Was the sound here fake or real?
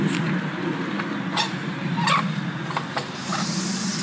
real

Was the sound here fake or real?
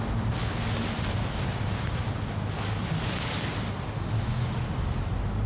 real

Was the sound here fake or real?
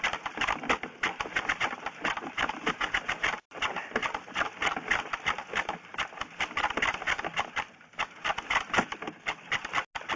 real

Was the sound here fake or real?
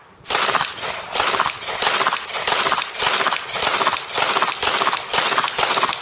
real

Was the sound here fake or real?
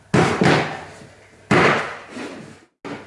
real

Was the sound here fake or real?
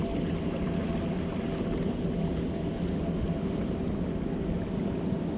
real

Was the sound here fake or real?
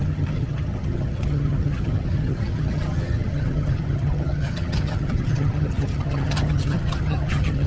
fake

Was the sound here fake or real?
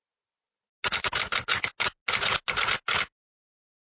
real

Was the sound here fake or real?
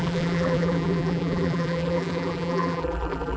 fake